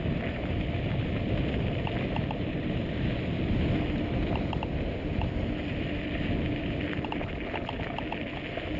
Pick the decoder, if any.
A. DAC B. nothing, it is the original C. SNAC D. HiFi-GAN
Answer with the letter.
B